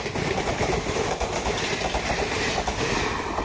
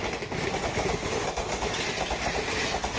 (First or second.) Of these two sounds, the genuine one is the second